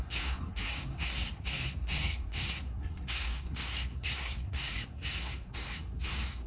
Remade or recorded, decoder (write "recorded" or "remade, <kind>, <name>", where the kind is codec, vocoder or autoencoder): remade, codec, SNAC